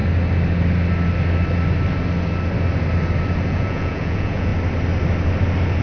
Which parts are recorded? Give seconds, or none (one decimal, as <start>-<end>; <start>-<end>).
0.0-3.5; 4.5-5.8